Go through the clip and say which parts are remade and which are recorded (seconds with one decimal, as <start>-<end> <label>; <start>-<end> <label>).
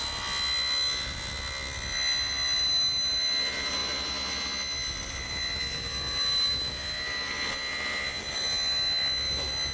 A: 0.0-9.7 recorded